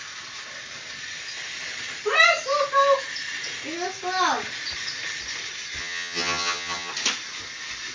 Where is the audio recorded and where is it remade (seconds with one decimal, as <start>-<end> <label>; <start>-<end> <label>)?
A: 0.0-5.8 recorded; 5.8-6.9 remade; 6.9-7.9 recorded